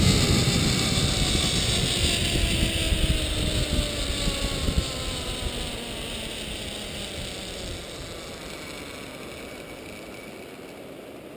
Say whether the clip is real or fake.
real